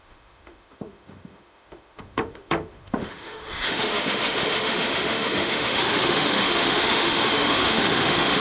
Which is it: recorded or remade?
remade